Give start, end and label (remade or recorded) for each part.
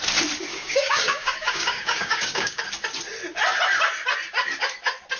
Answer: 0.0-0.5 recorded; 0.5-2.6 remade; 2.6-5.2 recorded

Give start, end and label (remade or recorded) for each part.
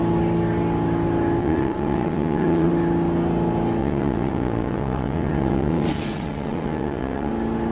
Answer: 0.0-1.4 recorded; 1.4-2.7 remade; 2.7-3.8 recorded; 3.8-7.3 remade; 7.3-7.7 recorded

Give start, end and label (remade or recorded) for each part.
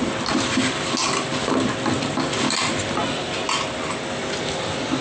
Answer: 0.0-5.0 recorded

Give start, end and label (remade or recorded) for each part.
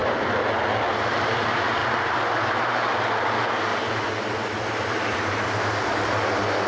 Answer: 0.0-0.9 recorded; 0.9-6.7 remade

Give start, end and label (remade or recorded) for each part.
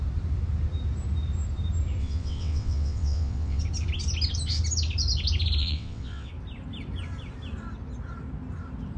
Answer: 0.0-2.0 recorded; 2.0-3.6 remade; 3.6-5.6 recorded; 5.6-6.3 remade; 6.3-9.0 recorded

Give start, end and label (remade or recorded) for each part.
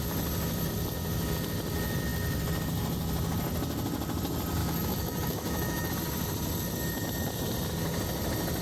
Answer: 0.0-4.6 recorded; 4.6-5.9 remade; 5.9-8.6 recorded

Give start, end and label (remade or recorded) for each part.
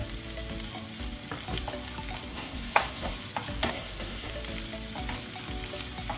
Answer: 0.0-2.3 recorded; 2.3-3.1 remade; 3.1-3.6 recorded; 3.6-4.3 remade; 4.3-6.2 recorded